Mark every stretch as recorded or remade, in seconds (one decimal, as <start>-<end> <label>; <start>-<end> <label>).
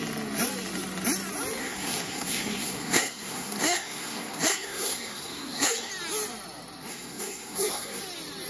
0.0-1.6 recorded; 1.6-5.9 remade; 5.9-6.9 recorded; 6.9-8.0 remade; 8.0-8.5 recorded